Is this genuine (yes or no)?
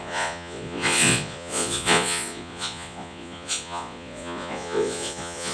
no